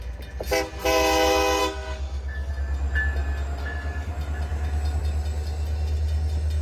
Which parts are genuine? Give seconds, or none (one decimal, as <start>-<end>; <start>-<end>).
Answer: 0.0-1.6; 2.5-3.6; 4.1-6.6